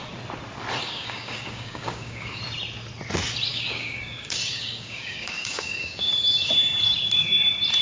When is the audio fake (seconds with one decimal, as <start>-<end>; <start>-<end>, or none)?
0.8-2.4; 3.5-6.1